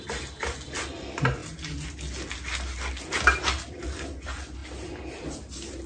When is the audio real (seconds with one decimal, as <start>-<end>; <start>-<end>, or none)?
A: 0.0-5.9